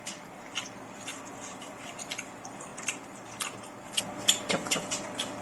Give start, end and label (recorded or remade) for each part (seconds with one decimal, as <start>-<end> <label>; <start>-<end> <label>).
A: 0.0-5.4 remade

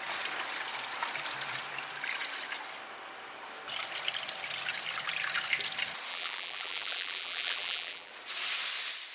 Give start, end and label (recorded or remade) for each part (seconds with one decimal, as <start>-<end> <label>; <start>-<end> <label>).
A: 0.0-6.1 recorded; 6.1-8.1 remade; 8.1-9.1 recorded

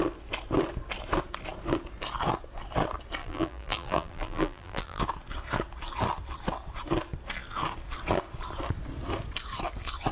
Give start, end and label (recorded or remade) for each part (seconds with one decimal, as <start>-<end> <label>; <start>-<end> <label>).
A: 0.0-3.2 recorded; 3.2-5.0 remade; 5.0-10.1 recorded